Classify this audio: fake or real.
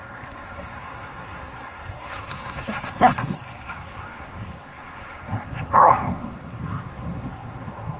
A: fake